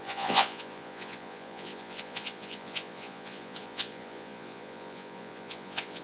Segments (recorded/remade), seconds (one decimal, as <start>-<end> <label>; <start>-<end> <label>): 0.0-6.0 remade